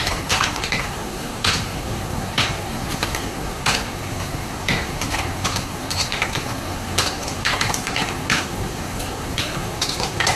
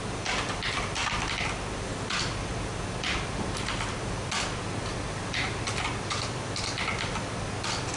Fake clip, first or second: first